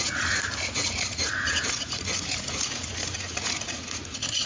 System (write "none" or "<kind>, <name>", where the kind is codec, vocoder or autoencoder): vocoder, Vocos